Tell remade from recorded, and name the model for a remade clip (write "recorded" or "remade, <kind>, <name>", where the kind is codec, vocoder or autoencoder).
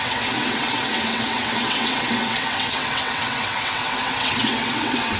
remade, vocoder, WaveNeXt